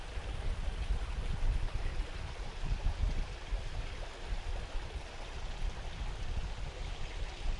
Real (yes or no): yes